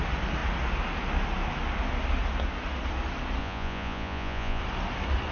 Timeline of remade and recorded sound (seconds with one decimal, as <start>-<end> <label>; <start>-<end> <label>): 0.0-3.4 recorded; 3.4-4.6 remade; 4.6-5.3 recorded